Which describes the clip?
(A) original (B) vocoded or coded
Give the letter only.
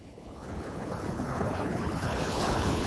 B